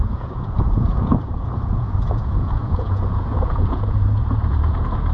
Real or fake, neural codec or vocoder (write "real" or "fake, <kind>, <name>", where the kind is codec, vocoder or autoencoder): fake, vocoder, Vocos